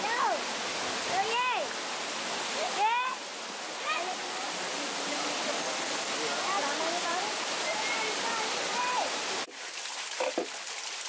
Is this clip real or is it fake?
real